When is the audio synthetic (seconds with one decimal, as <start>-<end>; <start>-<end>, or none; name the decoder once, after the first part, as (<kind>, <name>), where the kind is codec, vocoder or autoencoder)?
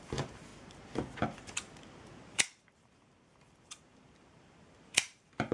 0.0-0.5 (vocoder, BigVGAN v2); 2.3-5.5